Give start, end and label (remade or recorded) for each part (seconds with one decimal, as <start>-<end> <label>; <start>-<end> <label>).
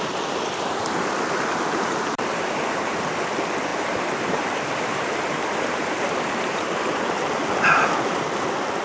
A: 0.0-1.5 recorded; 1.5-3.1 remade; 3.1-3.7 recorded; 3.7-7.0 remade; 7.0-8.8 recorded